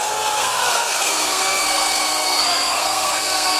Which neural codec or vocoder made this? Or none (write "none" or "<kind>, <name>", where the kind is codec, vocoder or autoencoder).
codec, SNAC